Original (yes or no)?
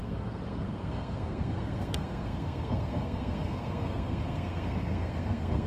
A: no